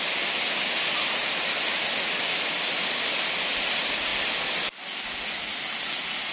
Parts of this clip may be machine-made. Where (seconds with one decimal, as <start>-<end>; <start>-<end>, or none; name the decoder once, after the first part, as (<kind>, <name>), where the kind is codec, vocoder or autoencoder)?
none